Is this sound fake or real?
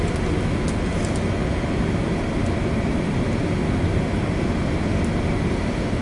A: real